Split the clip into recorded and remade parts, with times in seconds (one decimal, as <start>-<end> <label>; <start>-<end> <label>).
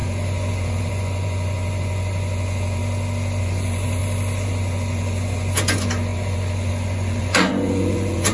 0.0-2.8 remade; 2.8-3.4 recorded; 3.4-4.0 remade; 4.0-4.5 recorded; 4.5-8.3 remade